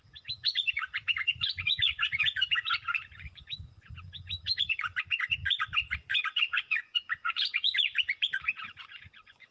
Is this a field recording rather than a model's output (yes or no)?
no